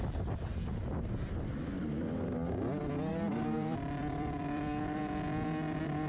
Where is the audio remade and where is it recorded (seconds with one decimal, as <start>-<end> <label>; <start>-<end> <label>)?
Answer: 0.0-3.1 recorded; 3.1-5.0 remade; 5.0-6.1 recorded